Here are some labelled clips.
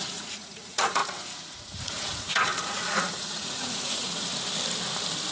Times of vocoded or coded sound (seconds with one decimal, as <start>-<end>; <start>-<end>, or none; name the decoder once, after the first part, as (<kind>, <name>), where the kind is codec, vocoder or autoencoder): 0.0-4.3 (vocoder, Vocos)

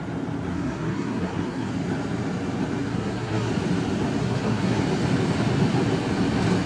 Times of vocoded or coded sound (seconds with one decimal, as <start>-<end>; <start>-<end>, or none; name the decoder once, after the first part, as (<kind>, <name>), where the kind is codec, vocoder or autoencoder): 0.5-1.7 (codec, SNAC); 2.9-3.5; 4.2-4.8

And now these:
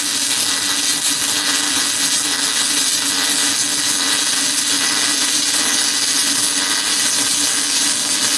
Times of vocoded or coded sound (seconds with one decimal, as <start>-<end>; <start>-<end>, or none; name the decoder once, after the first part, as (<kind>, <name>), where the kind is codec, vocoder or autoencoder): none

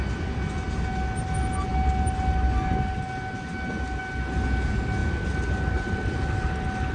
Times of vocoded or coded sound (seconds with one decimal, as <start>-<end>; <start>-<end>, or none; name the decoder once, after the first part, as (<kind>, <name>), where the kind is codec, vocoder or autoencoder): none

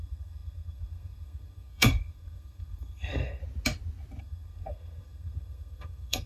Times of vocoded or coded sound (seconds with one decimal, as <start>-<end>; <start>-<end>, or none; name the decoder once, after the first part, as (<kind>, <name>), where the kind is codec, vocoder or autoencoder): 0.0-3.4 (codec, SNAC); 4.2-6.3